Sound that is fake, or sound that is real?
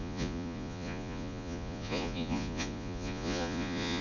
fake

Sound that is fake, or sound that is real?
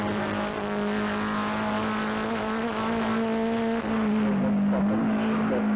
real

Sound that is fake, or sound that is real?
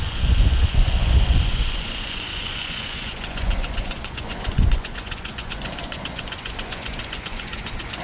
fake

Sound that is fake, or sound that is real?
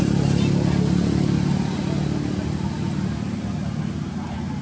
real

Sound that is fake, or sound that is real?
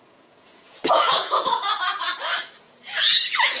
fake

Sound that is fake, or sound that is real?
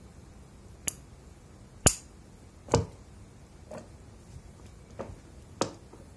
real